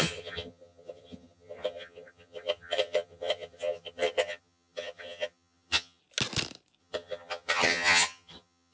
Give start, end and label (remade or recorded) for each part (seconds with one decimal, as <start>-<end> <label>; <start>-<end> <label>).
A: 0.0-6.0 remade; 6.0-6.8 recorded; 6.8-8.7 remade